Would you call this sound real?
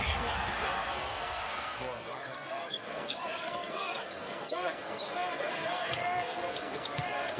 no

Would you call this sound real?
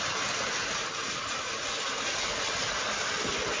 yes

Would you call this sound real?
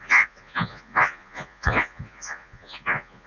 no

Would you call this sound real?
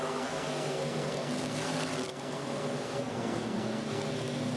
no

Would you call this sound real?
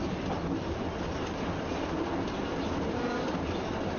yes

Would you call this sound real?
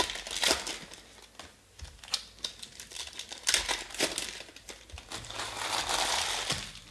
yes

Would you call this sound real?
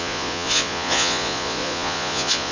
no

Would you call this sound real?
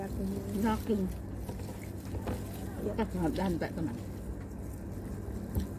yes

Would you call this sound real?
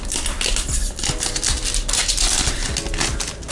yes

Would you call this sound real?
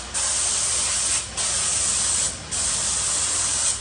yes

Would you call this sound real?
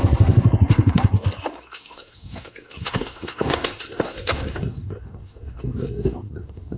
no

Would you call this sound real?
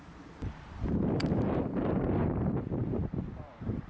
no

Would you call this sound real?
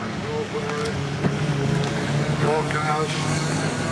no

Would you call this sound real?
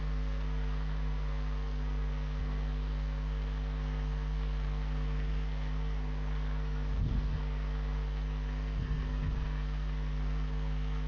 no